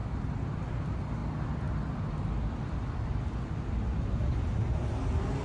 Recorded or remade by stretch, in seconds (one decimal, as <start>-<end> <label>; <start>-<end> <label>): 0.0-5.4 recorded